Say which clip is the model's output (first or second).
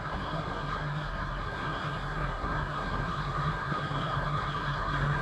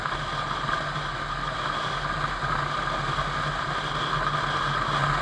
first